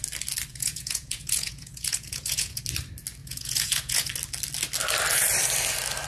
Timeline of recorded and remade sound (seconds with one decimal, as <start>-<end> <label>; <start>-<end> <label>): 0.0-0.5 recorded; 0.5-2.6 remade; 2.6-3.2 recorded; 3.2-4.1 remade; 4.1-6.1 recorded